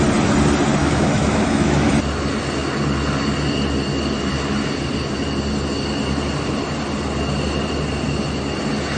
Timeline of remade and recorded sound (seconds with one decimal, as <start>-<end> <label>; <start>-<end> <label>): 0.0-0.8 recorded; 0.8-1.9 remade; 1.9-9.0 recorded